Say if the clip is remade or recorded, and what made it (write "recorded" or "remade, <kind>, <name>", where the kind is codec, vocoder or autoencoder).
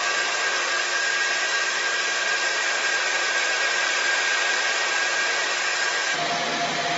recorded